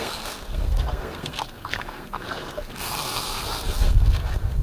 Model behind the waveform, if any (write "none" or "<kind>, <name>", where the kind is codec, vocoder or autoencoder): codec, SNAC